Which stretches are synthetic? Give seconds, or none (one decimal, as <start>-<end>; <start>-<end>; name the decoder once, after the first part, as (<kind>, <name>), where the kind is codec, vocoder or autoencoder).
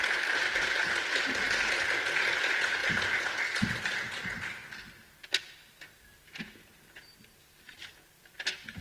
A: none